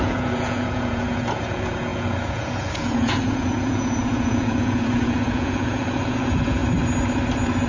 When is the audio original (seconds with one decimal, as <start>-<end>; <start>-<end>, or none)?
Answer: 6.6-7.7